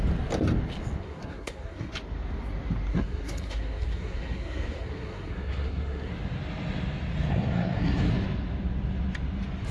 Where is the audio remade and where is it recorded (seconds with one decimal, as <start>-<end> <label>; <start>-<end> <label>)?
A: 0.0-1.0 recorded; 1.0-1.9 remade; 1.9-2.9 recorded; 2.9-6.1 remade; 6.1-7.3 recorded; 7.3-8.1 remade; 8.1-9.7 recorded